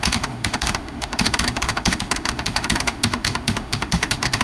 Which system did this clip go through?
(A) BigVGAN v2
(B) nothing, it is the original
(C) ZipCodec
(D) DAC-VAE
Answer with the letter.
D